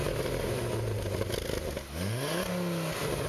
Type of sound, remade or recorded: recorded